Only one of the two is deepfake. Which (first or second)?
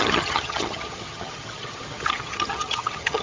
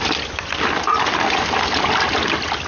first